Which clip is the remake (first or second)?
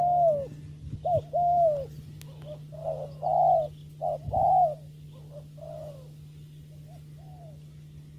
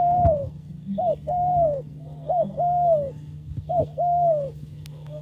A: second